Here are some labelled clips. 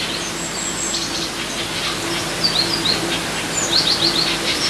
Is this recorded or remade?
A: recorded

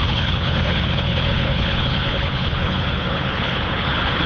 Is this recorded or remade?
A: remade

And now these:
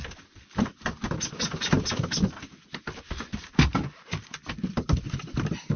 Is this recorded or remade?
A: recorded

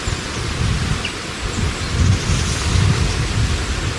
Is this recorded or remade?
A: recorded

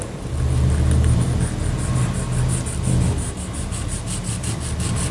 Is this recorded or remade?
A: recorded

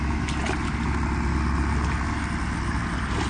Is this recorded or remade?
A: recorded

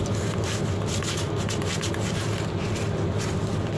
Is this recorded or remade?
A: recorded